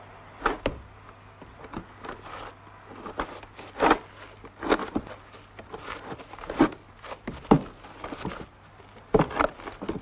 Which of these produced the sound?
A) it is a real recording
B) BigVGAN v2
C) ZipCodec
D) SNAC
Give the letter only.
A